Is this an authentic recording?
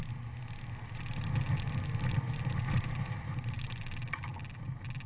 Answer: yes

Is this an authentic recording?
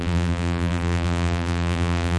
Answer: no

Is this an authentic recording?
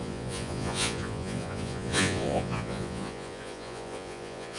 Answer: no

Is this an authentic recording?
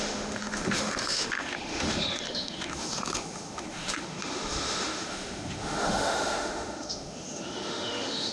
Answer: no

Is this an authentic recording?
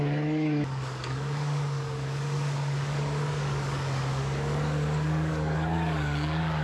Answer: no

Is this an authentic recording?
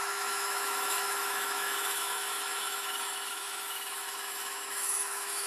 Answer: no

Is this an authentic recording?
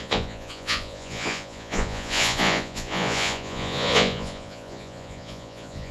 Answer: no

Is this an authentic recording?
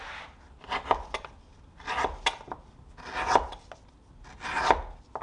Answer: yes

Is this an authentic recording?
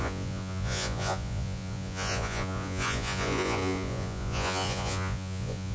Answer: no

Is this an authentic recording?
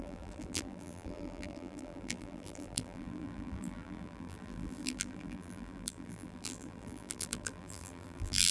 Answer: no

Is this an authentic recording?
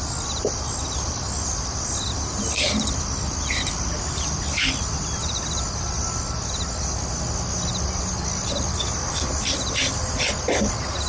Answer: yes